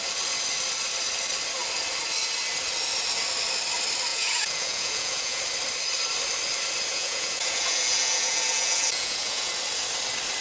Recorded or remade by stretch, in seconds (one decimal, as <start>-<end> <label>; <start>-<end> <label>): 0.0-4.1 recorded; 4.1-5.4 remade; 5.4-6.9 recorded; 6.9-9.5 remade; 9.5-10.4 recorded